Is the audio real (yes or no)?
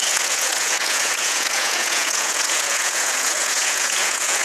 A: no